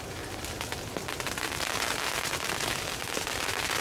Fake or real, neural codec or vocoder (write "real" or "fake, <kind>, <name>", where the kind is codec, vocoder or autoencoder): real